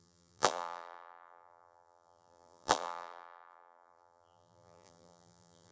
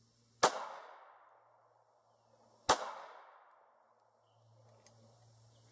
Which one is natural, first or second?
second